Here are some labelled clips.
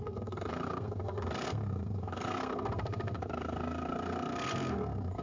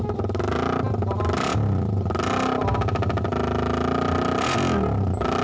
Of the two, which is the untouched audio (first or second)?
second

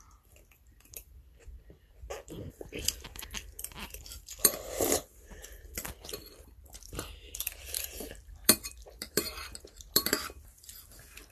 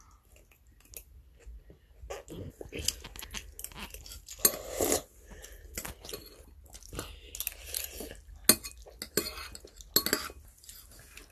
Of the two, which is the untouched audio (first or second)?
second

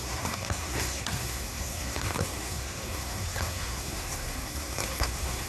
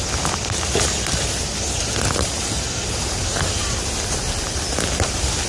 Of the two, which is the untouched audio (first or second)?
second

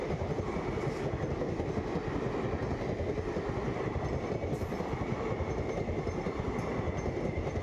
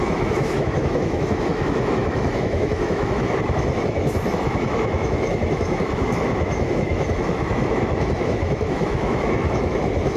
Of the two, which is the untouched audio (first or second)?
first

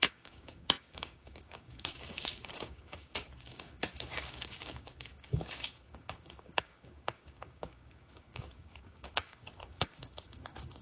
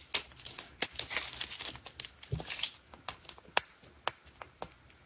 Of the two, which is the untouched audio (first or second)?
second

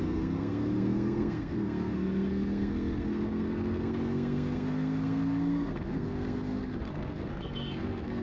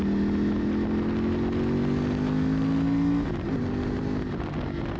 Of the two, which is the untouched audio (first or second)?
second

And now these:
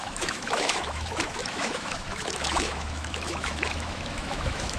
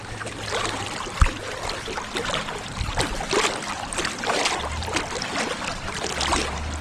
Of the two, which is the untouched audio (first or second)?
second